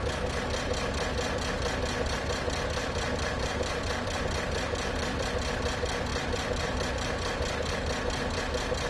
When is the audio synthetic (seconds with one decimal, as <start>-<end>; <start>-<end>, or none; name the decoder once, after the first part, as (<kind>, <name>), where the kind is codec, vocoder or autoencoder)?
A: 2.8-5.3 (vocoder, BigVGAN v2); 6.1-6.9